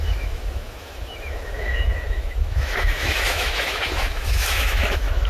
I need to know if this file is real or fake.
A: fake